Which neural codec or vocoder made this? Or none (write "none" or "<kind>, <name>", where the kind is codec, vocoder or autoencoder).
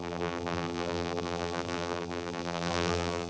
vocoder, BigVGAN v2